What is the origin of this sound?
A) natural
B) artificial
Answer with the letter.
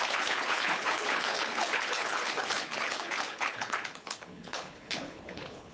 B